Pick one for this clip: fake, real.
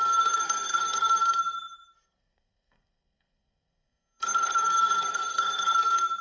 fake